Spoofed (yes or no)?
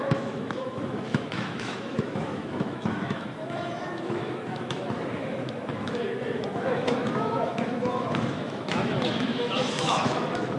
yes